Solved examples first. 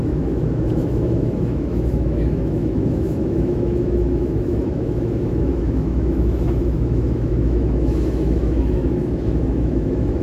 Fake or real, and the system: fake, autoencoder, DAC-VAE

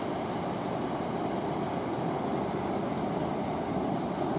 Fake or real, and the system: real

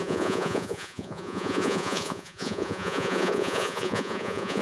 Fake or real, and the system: fake, vocoder, Vocos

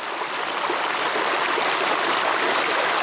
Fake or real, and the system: real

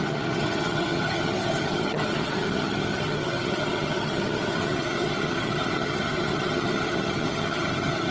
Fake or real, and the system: fake, vocoder, HiFi-GAN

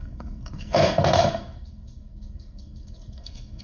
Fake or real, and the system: fake, codec, SNAC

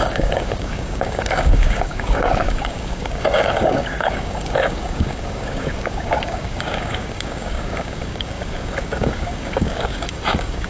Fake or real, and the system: fake, codec, DAC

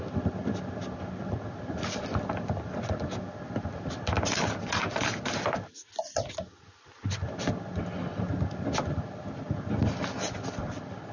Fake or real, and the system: real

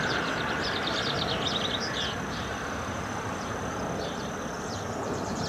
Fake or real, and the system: fake, vocoder, BigVGAN v2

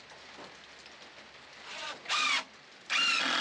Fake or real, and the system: real